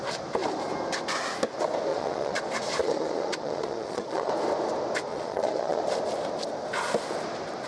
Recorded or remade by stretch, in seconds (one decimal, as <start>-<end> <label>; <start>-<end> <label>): 0.0-1.9 recorded; 1.9-2.4 remade; 2.4-2.8 recorded; 2.8-4.3 remade; 4.3-5.1 recorded; 5.1-5.8 remade; 5.8-7.7 recorded